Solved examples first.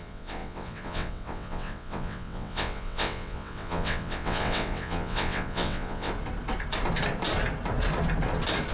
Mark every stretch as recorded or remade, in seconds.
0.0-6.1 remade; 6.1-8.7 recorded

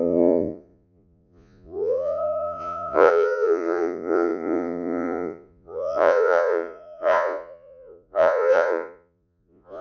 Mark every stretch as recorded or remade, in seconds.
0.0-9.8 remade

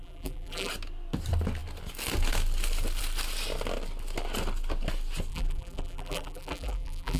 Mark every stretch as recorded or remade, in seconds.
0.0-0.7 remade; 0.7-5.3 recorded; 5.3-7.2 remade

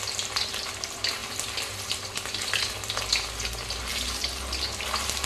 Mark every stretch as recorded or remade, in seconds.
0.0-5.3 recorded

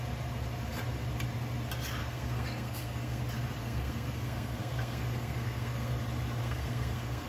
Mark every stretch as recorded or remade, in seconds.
0.0-2.0 recorded; 2.0-3.2 remade; 3.2-3.6 recorded; 3.6-5.9 remade; 5.9-6.4 recorded; 6.4-7.3 remade

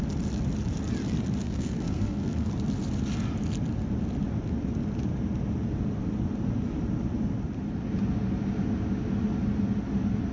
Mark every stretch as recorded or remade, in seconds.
0.0-1.4 recorded; 1.4-2.5 remade; 2.5-10.3 recorded

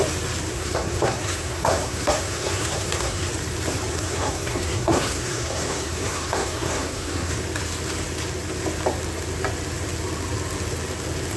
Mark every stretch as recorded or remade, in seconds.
0.0-0.5 recorded; 0.5-3.3 remade; 3.3-3.9 recorded; 3.9-7.3 remade; 7.3-11.4 recorded